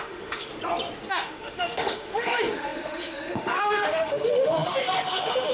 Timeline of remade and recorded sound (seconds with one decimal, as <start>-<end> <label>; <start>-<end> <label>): 0.0-0.5 remade; 0.5-1.1 recorded; 1.1-5.5 remade